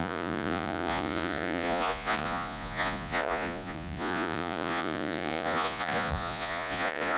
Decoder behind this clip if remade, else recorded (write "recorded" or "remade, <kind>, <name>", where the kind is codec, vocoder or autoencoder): remade, vocoder, Vocos